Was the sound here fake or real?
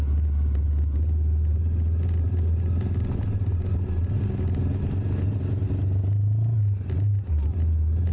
real